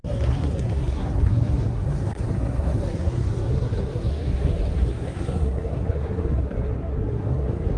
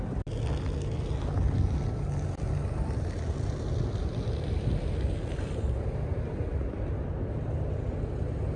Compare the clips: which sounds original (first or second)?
second